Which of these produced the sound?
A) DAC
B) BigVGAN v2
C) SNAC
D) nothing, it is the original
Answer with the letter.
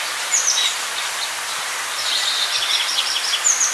B